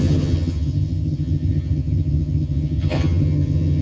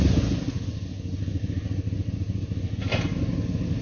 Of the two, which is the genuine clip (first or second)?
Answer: second